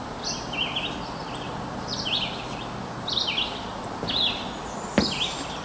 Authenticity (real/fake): real